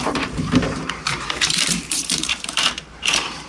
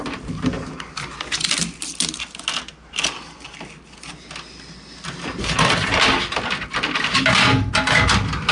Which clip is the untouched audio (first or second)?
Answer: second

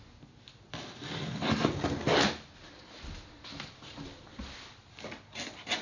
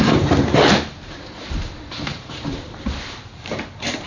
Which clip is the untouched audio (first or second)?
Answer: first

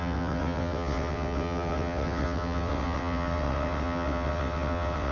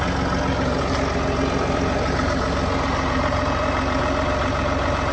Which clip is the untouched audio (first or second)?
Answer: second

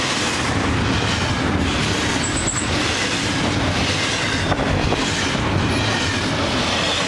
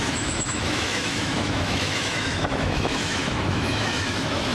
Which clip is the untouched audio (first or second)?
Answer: first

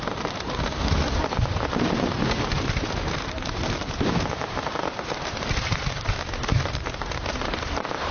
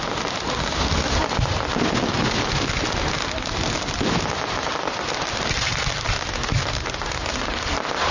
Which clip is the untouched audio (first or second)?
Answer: second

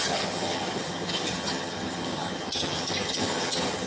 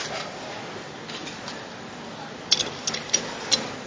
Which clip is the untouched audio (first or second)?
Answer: second